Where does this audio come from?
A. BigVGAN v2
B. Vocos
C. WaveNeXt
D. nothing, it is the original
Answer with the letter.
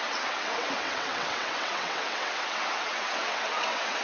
C